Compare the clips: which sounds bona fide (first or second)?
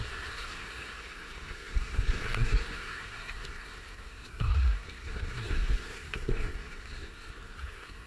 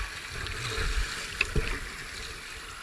second